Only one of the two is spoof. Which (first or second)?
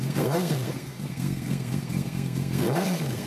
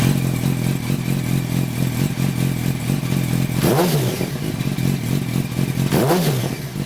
first